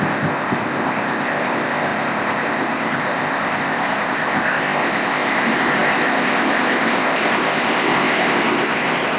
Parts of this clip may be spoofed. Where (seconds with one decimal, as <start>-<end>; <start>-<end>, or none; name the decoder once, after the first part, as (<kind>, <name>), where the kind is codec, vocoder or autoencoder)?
0.0-9.2 (codec, ZipCodec)